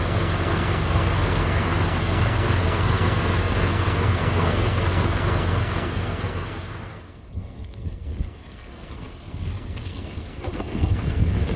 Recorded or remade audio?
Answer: remade